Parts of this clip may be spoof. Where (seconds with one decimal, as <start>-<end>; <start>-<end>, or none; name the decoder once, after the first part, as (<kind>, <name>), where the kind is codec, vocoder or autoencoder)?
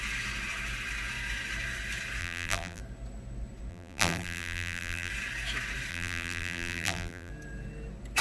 2.2-2.8 (vocoder, BigVGAN v2); 3.7-5.1; 5.9-7.3